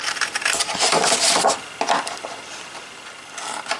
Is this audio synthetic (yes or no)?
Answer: no